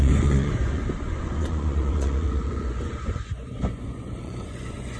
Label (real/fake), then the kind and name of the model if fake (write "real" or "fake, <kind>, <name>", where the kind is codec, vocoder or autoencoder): fake, vocoder, Vocos